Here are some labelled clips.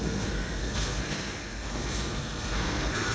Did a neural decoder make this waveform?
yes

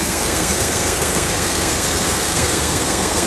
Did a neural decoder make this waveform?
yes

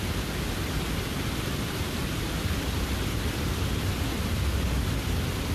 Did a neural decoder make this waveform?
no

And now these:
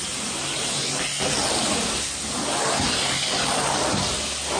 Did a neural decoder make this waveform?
no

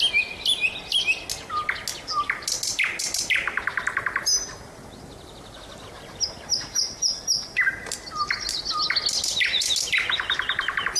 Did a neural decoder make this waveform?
no